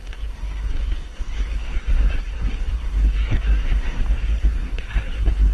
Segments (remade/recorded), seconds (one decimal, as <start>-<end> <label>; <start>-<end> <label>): 0.0-5.5 remade